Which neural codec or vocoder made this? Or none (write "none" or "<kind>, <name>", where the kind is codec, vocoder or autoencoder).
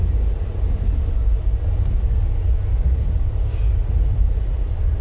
none